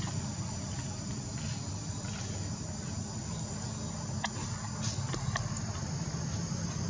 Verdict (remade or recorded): recorded